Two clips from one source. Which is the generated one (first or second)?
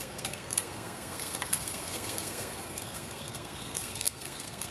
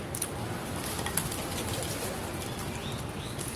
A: first